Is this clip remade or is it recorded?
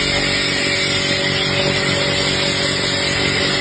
recorded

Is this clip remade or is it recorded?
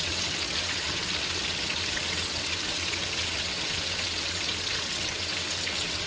remade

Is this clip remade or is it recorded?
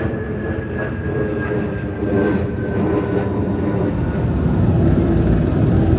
recorded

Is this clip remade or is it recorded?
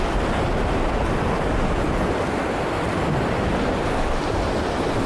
recorded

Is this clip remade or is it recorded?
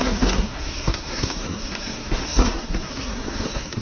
remade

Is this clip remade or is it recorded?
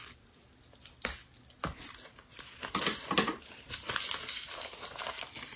recorded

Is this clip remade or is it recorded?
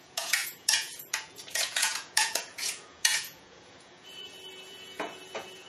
remade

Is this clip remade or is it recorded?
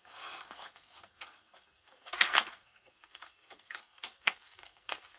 remade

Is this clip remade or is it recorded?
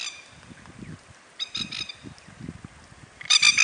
recorded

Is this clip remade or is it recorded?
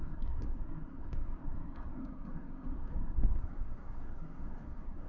remade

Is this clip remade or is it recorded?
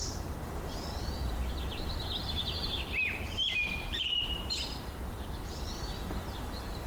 remade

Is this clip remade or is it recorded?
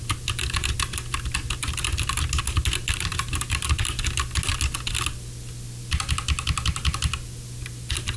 recorded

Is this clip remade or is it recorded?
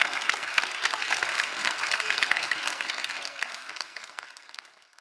remade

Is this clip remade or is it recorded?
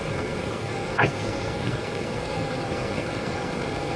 remade